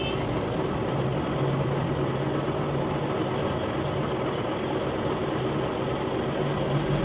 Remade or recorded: recorded